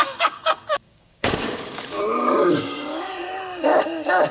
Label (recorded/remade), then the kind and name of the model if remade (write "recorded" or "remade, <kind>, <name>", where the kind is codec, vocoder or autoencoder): remade, codec, DAC